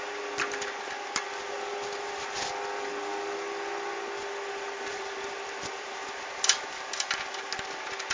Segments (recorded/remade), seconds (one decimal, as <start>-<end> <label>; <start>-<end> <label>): 0.0-4.9 recorded; 4.9-6.2 remade; 6.2-8.1 recorded